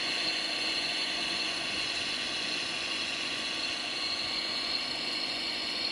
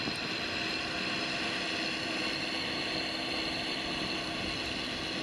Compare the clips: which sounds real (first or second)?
second